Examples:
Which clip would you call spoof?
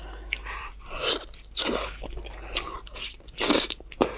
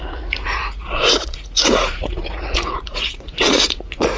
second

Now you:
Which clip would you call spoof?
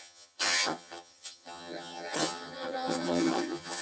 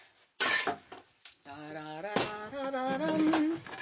first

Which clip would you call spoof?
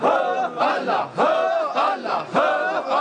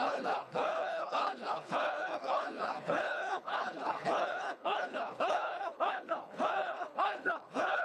second